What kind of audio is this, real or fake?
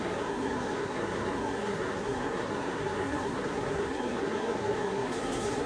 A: fake